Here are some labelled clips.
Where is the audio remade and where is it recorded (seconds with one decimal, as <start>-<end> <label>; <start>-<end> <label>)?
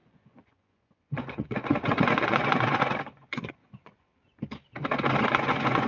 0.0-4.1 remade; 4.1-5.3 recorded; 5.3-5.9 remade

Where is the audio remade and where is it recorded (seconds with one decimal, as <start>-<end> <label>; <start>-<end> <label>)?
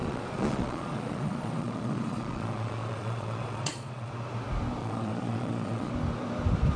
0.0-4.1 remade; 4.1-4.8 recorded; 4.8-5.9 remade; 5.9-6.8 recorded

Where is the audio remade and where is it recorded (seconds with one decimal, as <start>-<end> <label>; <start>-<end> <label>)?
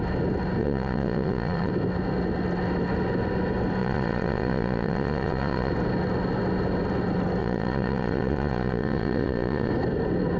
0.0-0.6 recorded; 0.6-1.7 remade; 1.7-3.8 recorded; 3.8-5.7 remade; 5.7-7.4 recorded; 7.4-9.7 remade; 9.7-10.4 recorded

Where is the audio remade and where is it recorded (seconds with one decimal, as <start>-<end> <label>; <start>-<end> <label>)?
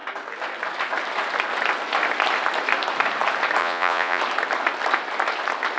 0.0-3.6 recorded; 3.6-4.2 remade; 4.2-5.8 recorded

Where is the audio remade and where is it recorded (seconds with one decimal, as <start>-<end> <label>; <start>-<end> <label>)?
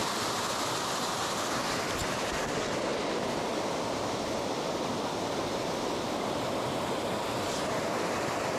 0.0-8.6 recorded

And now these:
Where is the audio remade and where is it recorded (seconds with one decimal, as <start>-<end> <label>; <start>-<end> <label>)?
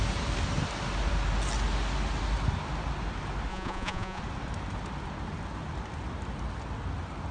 0.0-3.5 recorded; 3.5-4.2 remade; 4.2-7.3 recorded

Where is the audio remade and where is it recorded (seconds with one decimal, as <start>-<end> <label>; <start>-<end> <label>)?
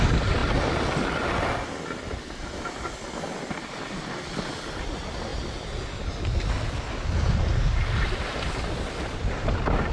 0.0-9.9 recorded